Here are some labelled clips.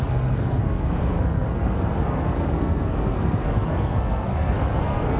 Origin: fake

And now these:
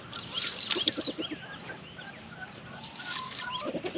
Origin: real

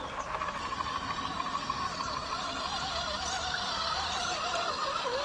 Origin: real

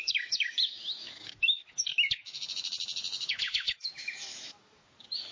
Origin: fake